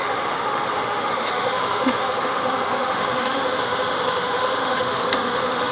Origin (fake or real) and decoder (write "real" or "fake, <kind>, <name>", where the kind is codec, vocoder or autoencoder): fake, autoencoder, DAC-VAE